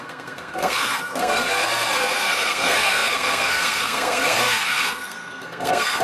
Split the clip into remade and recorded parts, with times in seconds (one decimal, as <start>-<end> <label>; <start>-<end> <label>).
0.0-6.0 remade